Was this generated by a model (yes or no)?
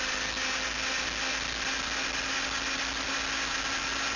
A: no